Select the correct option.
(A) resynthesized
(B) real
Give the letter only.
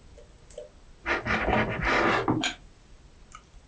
B